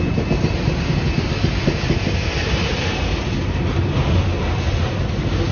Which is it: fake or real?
real